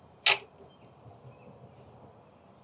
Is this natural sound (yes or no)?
yes